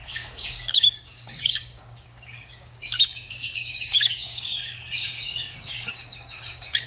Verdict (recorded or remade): remade